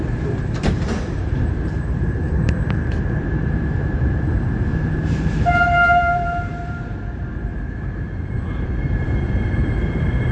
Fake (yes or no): yes